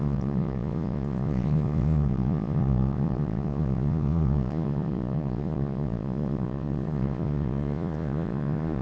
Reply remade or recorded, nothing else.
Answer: remade